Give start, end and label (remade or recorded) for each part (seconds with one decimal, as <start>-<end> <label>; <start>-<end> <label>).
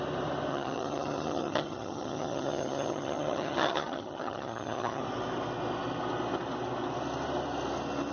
0.0-0.5 recorded; 0.5-5.0 remade; 5.0-8.1 recorded